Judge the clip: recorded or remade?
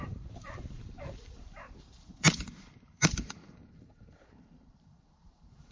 remade